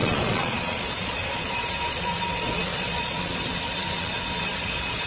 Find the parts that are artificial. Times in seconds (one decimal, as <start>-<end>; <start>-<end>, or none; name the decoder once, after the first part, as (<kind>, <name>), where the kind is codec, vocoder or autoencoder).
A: 0.0-5.1 (vocoder, Vocos)